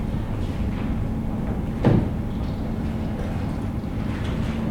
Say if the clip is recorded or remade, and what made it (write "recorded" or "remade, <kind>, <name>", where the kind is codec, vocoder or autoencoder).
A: recorded